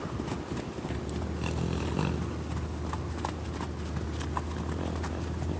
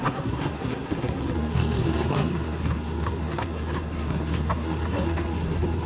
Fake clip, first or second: second